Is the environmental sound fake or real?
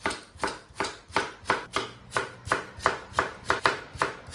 fake